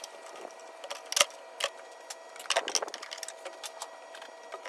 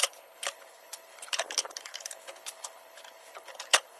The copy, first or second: second